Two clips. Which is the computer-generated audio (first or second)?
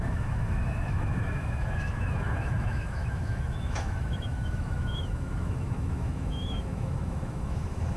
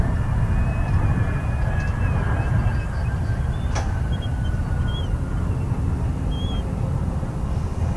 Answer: first